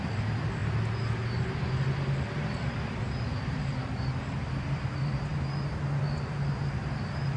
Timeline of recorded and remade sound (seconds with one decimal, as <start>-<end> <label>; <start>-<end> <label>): 0.0-0.6 remade; 0.6-3.4 recorded; 3.4-5.3 remade; 5.3-6.3 recorded; 6.3-7.4 remade